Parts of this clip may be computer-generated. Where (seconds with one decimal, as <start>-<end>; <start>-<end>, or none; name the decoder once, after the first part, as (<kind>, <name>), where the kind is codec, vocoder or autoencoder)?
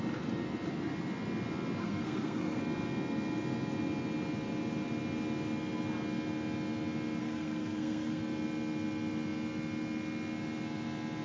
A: 1.8-2.6 (codec, SNAC); 7.2-8.2